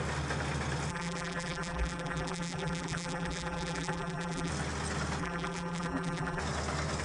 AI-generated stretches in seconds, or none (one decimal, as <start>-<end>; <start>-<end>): 0.9-4.5; 5.2-6.4